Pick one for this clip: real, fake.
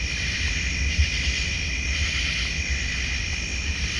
real